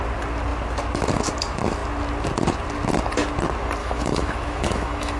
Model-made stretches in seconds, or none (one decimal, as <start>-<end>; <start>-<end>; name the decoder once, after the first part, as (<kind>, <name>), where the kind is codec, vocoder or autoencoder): 3.8-5.2 (autoencoder, DAC-VAE)